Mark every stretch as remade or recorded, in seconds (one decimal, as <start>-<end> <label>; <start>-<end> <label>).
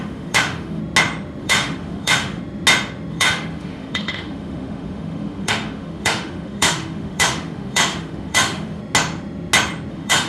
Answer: 0.0-0.8 remade; 0.8-1.4 recorded; 1.4-2.4 remade; 2.4-3.1 recorded; 3.1-8.8 remade; 8.8-9.9 recorded; 9.9-10.3 remade